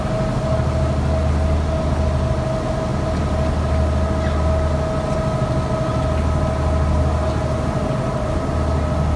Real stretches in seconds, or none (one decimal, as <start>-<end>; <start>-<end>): 0.0-9.2

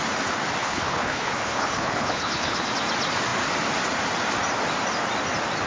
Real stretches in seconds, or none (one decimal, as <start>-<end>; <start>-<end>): 0.0-0.6; 2.7-5.7

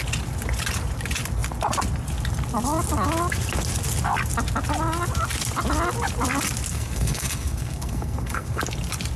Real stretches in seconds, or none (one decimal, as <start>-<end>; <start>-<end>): 0.0-6.7; 8.6-9.2